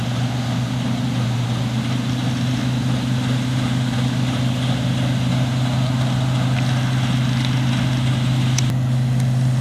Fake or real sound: real